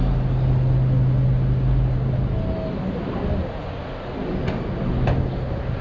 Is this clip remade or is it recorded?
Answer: recorded